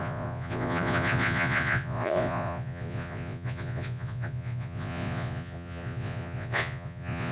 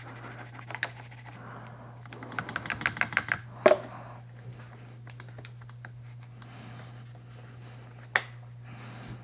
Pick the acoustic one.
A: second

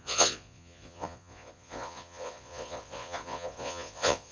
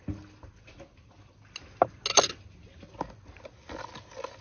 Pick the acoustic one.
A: second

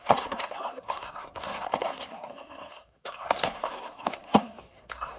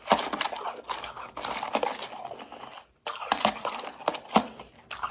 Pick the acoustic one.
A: second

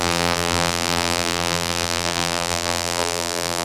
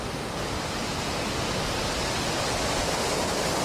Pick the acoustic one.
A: second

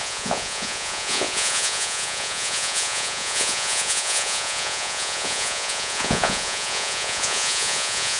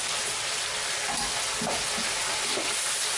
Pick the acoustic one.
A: second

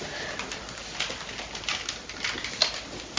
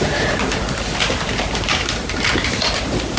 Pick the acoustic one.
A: first